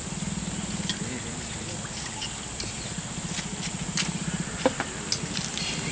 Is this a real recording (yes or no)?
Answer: yes